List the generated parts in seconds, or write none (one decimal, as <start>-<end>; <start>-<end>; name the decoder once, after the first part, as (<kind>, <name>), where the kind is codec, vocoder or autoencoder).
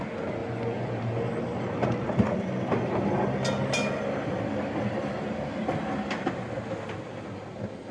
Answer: 0.4-0.9 (vocoder, Vocos)